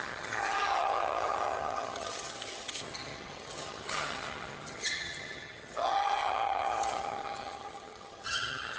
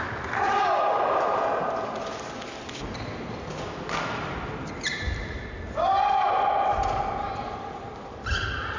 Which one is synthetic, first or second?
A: first